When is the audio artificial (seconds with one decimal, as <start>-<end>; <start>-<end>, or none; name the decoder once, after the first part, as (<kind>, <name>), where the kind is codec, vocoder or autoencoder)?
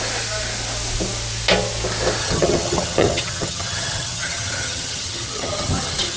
2.2-6.2 (vocoder, HiFi-GAN)